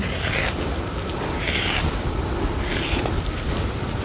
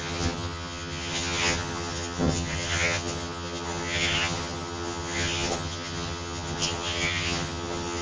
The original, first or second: first